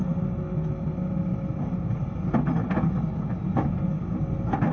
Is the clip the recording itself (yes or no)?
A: yes